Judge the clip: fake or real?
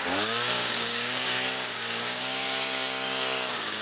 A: fake